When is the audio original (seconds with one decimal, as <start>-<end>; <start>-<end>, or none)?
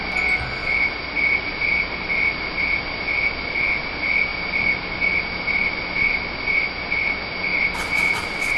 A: 0.0-0.6; 1.5-8.6